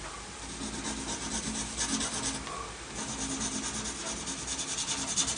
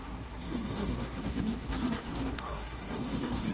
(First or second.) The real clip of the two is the first